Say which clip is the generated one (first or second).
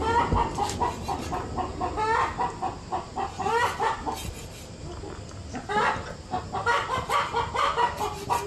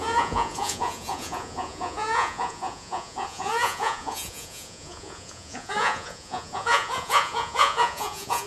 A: second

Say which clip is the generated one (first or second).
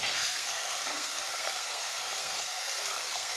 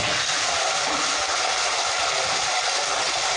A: first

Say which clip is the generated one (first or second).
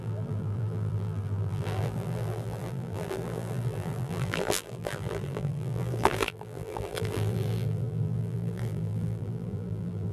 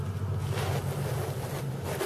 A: first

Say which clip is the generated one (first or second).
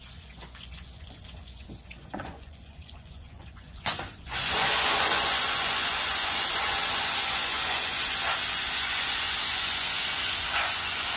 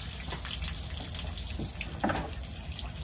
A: first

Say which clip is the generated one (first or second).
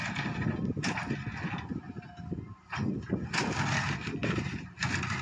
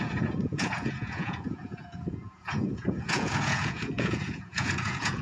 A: second